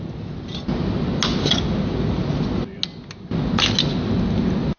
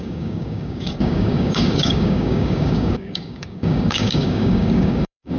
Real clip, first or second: first